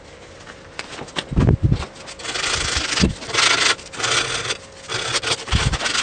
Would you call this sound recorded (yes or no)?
yes